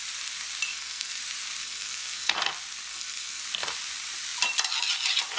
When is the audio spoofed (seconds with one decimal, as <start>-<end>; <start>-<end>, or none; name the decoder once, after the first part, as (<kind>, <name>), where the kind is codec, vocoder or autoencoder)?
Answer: 0.7-1.2 (codec, SNAC); 1.6-2.4; 2.9-3.4